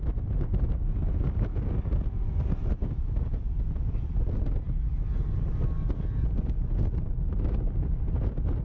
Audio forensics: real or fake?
real